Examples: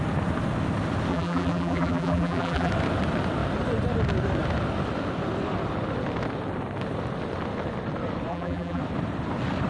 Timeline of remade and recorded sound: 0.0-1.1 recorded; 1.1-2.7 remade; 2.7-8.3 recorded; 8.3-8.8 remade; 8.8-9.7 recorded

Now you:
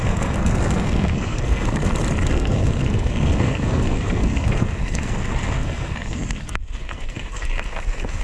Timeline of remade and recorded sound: 0.0-1.8 remade; 1.8-2.3 recorded; 2.3-8.2 remade

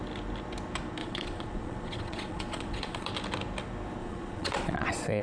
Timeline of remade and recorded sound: 0.0-1.0 recorded; 1.0-3.1 remade; 3.1-4.0 recorded; 4.0-5.2 remade

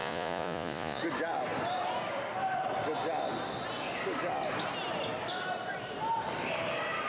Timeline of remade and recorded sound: 0.0-1.0 remade; 1.0-7.1 recorded

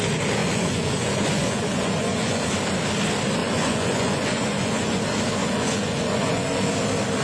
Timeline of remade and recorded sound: 0.0-0.4 recorded; 0.4-2.5 remade; 2.5-3.4 recorded; 3.4-5.0 remade; 5.0-5.4 recorded; 5.4-6.7 remade; 6.7-7.2 recorded

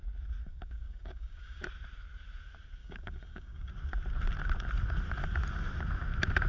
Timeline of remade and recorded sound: 0.0-0.4 recorded; 0.4-1.6 remade; 1.6-2.8 recorded; 2.8-3.7 remade; 3.7-6.5 recorded

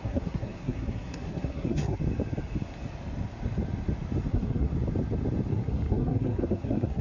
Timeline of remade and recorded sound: 0.0-2.0 remade; 2.0-4.3 recorded; 4.3-4.7 remade; 4.7-5.5 recorded; 5.5-7.0 remade

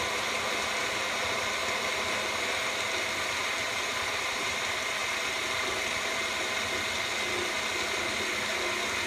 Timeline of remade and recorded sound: 0.0-9.1 recorded